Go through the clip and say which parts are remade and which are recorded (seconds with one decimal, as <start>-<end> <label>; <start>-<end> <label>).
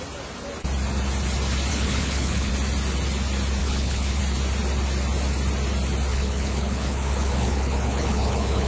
0.0-1.7 recorded; 1.7-2.5 remade; 2.5-3.6 recorded; 3.6-4.2 remade; 4.2-6.1 recorded; 6.1-8.7 remade